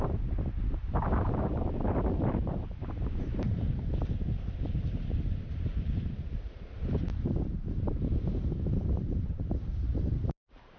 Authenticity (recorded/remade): remade